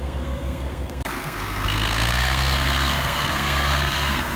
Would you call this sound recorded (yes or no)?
no